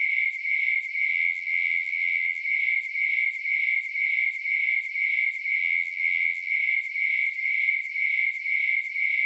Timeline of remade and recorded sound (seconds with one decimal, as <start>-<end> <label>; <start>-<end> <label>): 0.0-1.1 recorded; 1.1-2.4 remade; 2.4-5.6 recorded; 5.6-6.5 remade; 6.5-9.3 recorded